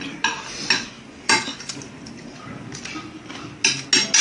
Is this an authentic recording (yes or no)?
yes